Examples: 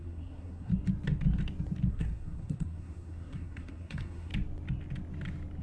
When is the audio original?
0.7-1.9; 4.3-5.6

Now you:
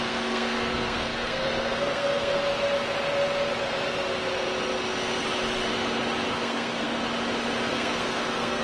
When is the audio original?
2.4-6.3; 7.0-7.7

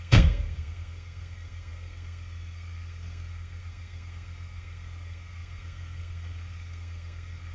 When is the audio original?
none

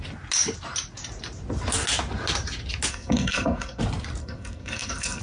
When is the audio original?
0.0-2.9; 3.8-4.2